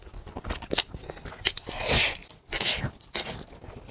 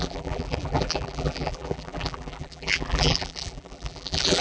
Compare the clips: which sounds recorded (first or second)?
first